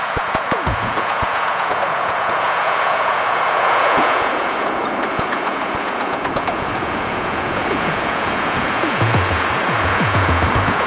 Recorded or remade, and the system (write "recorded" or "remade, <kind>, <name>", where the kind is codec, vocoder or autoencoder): remade, vocoder, Vocos